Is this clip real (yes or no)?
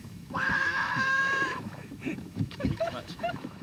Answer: no